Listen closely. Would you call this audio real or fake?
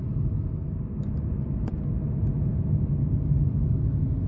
real